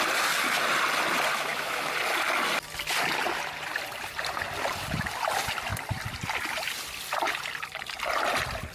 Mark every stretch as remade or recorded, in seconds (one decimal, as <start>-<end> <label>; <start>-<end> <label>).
0.0-1.3 recorded; 1.3-1.9 remade; 1.9-8.7 recorded